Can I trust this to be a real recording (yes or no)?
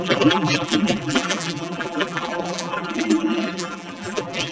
no